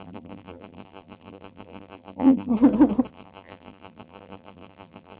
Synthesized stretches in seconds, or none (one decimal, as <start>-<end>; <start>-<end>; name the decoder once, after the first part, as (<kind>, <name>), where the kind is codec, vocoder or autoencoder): 0.0-2.5 (vocoder, BigVGAN v2); 3.1-5.2